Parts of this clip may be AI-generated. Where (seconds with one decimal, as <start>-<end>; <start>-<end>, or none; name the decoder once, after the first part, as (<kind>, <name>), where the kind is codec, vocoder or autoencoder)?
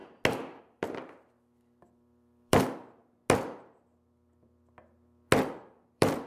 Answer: 0.6-3.0 (vocoder, BigVGAN v2); 5.6-6.3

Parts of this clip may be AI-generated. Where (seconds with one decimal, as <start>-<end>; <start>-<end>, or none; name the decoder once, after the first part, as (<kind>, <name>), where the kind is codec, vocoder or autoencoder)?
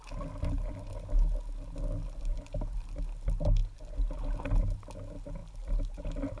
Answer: none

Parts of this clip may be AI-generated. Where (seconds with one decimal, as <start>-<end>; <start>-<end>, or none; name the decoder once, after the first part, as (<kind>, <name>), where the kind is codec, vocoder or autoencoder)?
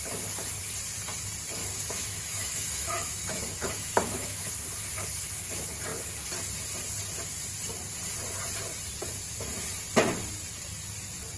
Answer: 1.6-4.5 (autoencoder, DAC-VAE)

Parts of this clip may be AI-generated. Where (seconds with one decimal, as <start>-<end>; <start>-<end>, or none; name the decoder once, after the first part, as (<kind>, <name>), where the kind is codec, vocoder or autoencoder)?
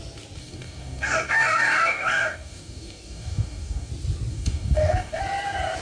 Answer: 0.4-3.9 (codec, DAC); 4.3-5.2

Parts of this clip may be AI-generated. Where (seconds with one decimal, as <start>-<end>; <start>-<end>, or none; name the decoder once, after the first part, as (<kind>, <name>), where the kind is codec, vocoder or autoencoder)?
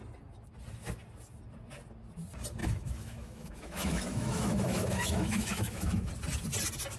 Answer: 2.6-6.1 (autoencoder, DAC-VAE)